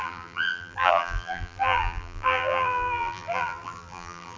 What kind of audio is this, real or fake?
fake